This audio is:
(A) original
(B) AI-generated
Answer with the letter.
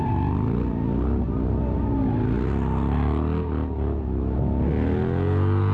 A